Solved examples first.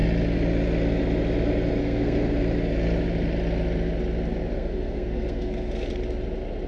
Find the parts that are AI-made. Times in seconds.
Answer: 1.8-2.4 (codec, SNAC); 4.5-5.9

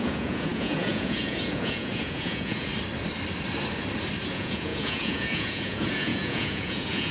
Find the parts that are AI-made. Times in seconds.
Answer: 0.0-2.7 (vocoder, Vocos); 4.3-7.1

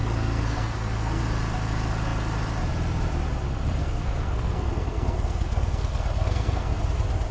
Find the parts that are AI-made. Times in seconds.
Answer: 0.0-1.2 (codec, SNAC); 3.8-6.8

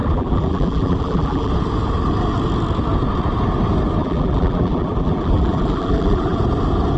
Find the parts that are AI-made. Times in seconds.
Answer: 0.0-1.5 (vocoder, BigVGAN v2); 4.0-6.4

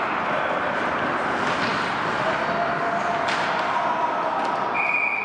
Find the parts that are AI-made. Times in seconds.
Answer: none